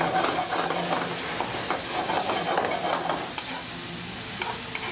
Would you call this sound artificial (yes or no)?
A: no